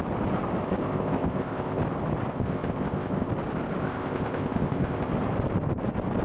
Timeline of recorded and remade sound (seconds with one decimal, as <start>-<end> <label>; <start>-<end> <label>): 0.0-0.6 recorded; 0.6-1.8 remade; 1.8-2.3 recorded; 2.3-3.3 remade; 3.3-3.8 recorded; 3.8-5.1 remade; 5.1-6.2 recorded